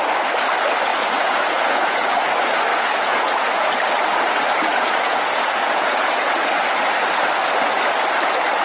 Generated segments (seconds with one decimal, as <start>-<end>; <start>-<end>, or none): 0.9-2.2; 2.7-3.7; 4.7-6.6